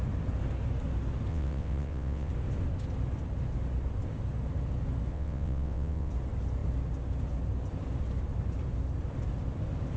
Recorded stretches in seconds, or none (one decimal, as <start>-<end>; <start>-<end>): 0.0-1.3; 2.3-5.1; 6.1-10.0